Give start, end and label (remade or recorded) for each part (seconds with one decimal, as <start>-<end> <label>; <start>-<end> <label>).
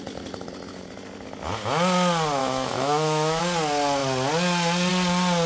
0.0-2.4 recorded; 2.4-3.4 remade; 3.4-5.5 recorded